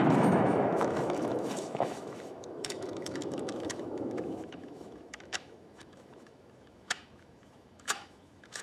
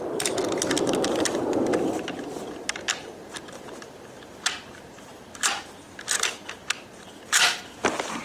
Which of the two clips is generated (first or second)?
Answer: first